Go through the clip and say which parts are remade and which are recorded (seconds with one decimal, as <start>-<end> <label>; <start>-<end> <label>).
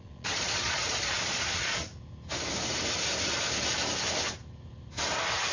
0.0-1.9 remade; 1.9-5.5 recorded